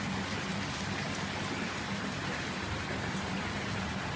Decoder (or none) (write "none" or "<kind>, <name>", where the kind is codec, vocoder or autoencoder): none